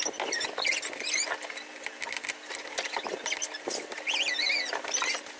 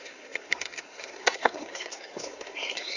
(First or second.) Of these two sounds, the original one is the first